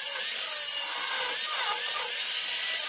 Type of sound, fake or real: real